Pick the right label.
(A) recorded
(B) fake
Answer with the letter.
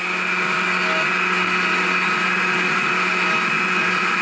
A